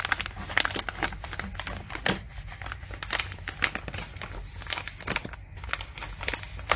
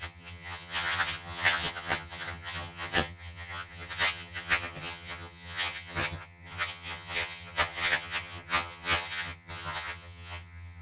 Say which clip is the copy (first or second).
second